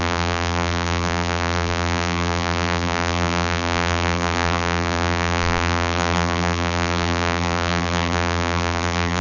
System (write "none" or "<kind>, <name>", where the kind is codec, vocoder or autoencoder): vocoder, BigVGAN v2